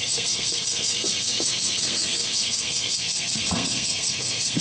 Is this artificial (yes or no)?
yes